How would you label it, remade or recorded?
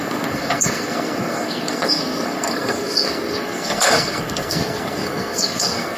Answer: remade